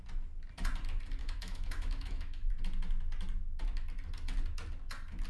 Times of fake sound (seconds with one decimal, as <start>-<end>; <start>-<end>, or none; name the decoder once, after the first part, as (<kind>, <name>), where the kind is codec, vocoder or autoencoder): 1.2-2.5 (autoencoder, DAC-VAE)